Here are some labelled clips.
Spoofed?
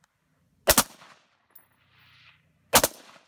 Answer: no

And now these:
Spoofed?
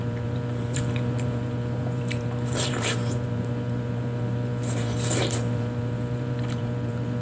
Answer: yes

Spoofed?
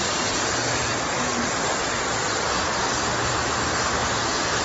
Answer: no